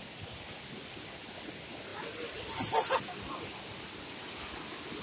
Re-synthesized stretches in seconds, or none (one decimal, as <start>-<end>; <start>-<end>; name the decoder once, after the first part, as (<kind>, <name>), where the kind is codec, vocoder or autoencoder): none